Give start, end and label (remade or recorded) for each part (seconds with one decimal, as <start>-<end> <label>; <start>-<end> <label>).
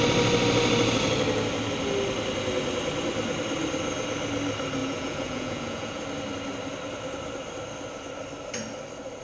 0.0-4.8 recorded; 4.8-6.0 remade; 6.0-9.2 recorded